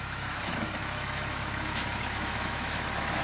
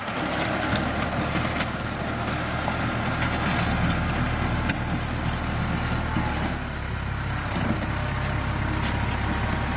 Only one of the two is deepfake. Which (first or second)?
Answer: first